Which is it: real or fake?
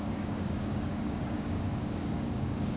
fake